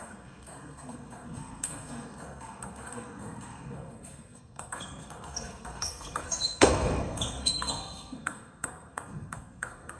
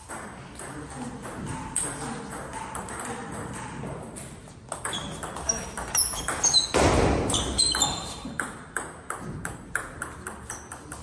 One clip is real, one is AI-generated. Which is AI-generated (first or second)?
first